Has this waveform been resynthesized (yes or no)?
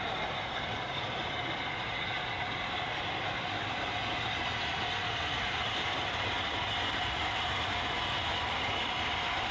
no